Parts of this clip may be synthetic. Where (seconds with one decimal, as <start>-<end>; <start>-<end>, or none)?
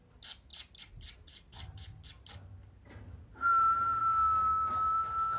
4.0-4.7